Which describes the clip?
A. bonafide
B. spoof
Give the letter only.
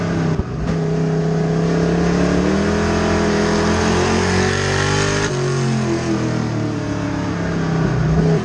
A